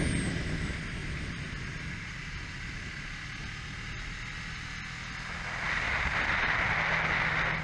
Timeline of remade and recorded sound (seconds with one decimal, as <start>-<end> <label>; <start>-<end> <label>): 0.0-7.6 recorded